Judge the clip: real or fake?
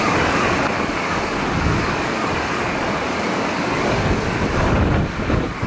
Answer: fake